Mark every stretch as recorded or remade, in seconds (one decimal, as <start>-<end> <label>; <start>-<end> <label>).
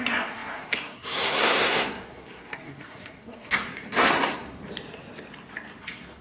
0.0-4.6 remade; 4.6-5.8 recorded; 5.8-6.2 remade